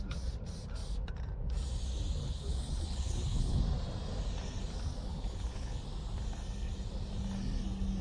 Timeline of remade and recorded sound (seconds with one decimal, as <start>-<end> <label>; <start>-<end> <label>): 0.0-2.2 recorded; 2.2-3.6 remade; 3.6-5.1 recorded; 5.1-5.8 remade; 5.8-8.0 recorded

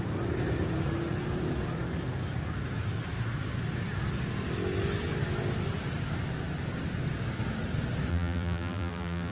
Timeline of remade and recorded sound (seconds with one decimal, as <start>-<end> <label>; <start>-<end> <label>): 0.0-8.1 recorded; 8.1-9.3 remade

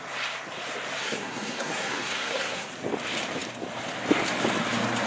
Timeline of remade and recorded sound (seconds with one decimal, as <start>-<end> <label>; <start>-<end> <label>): 0.0-1.0 recorded; 1.0-2.7 remade; 2.7-5.1 recorded